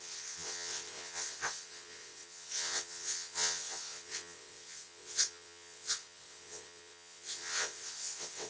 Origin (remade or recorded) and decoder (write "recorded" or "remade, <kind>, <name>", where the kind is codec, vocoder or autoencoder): remade, vocoder, WaveNeXt